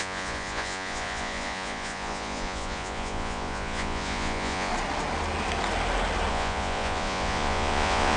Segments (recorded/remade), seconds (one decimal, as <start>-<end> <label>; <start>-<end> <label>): 0.0-4.7 remade; 4.7-6.3 recorded; 6.3-8.2 remade